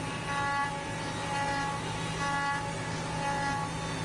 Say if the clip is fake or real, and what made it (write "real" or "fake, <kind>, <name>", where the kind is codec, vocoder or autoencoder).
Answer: real